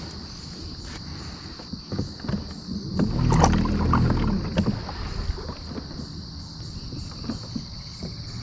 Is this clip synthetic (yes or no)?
no